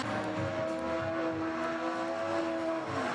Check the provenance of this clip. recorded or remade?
recorded